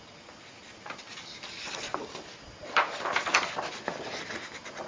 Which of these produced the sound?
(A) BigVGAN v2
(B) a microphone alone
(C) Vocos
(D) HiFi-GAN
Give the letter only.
B